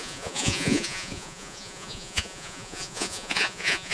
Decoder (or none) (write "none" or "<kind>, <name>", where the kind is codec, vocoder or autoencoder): vocoder, Vocos